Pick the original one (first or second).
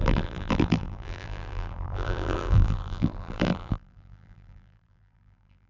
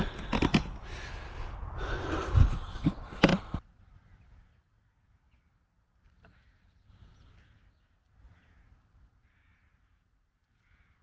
second